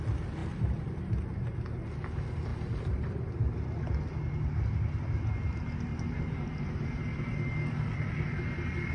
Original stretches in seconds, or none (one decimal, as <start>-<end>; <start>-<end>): 0.0-0.4; 1.1-2.5; 3.7-5.9; 7.0-8.9